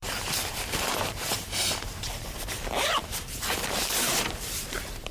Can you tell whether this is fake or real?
fake